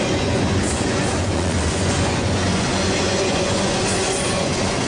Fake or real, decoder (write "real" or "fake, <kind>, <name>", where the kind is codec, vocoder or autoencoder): fake, vocoder, Vocos